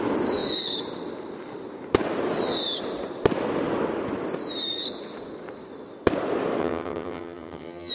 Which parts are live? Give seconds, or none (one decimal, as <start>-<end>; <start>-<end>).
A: 0.0-6.6

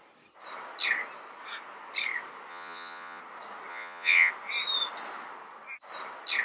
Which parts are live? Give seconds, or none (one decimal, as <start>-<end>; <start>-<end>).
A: 0.0-2.5; 3.2-3.7; 4.3-6.4

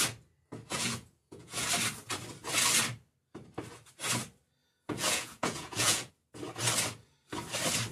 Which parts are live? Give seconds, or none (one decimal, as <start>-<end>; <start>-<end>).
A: 0.0-0.7; 1.7-4.6; 6.1-7.9

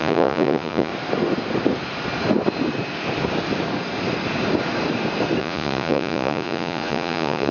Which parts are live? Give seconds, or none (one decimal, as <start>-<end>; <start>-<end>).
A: 0.9-5.4

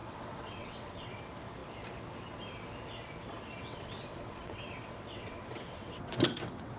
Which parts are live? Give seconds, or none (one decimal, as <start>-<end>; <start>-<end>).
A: 1.2-3.6